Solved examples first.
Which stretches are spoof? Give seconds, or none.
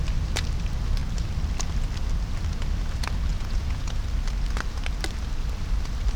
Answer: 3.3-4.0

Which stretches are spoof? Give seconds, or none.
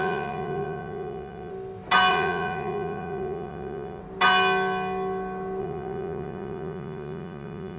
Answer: 0.0-1.5; 2.1-4.0; 5.6-7.8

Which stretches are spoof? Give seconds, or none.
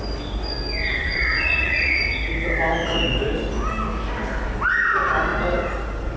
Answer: 1.0-2.0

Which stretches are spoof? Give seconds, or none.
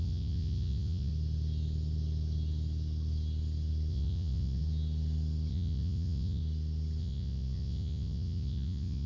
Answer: 0.0-1.1; 3.9-4.6; 5.5-6.4; 7.0-9.1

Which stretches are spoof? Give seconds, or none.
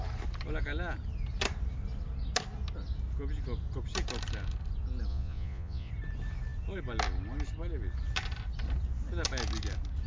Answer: 5.1-5.9